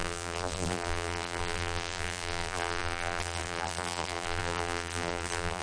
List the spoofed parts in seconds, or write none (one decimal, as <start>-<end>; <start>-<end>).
0.0-5.6